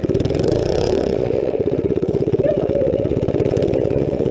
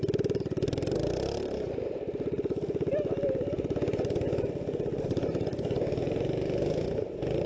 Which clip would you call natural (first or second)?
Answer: second